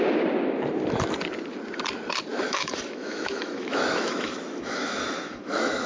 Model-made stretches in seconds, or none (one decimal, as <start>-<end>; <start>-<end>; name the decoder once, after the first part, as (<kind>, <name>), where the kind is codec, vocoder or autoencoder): 2.3-5.9 (autoencoder, DAC-VAE)